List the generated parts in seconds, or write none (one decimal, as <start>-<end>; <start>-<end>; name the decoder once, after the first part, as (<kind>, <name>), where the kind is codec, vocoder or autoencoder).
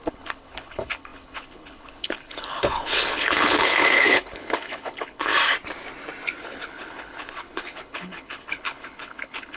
0.0-5.3 (codec, HILCodec); 6.4-9.6